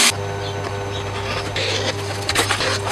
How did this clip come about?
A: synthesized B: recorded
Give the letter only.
B